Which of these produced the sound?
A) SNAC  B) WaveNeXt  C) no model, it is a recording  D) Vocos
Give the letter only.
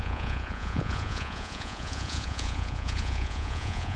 D